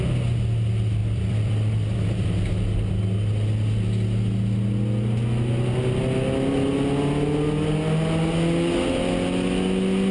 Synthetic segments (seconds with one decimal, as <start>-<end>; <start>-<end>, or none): 1.0-3.0